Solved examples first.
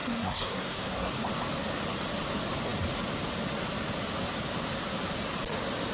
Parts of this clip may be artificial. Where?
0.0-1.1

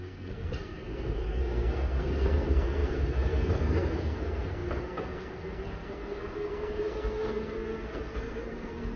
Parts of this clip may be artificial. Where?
0.0-9.0

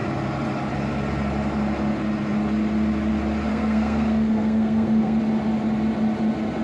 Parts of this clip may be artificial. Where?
3.5-5.2

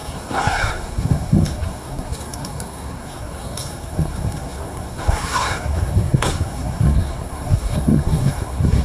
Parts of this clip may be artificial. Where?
0.0-8.8

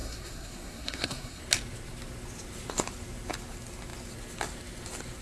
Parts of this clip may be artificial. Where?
0.0-1.4